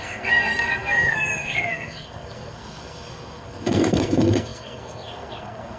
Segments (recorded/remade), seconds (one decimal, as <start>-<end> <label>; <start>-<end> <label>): 0.0-5.8 remade